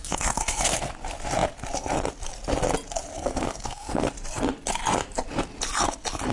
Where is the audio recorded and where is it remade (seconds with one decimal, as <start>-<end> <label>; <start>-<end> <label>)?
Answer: 0.0-0.9 remade; 0.9-3.1 recorded; 3.1-4.1 remade; 4.1-6.3 recorded